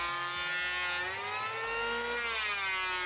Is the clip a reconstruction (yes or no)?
no